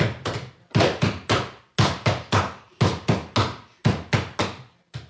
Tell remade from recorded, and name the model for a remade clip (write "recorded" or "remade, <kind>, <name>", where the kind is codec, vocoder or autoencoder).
recorded